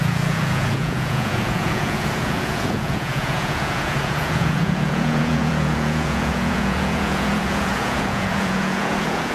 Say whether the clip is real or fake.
fake